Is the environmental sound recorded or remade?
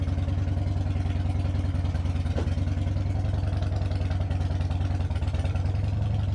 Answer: recorded